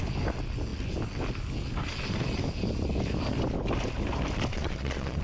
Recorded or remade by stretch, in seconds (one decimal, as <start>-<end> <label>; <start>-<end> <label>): 0.0-4.5 recorded; 4.5-5.2 remade